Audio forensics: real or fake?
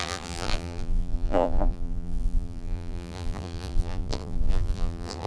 fake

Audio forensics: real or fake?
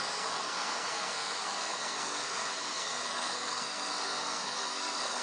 fake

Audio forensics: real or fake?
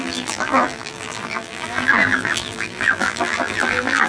fake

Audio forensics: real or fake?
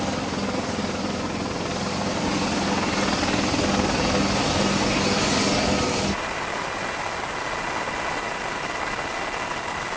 real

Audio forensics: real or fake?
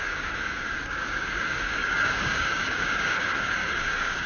fake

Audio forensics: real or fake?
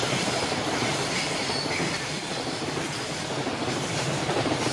fake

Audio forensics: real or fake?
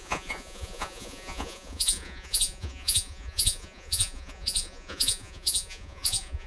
fake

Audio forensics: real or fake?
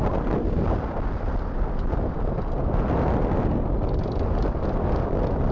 real